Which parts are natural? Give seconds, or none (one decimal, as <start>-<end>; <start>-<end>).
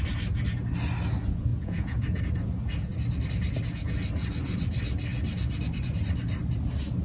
0.0-1.5; 2.2-7.0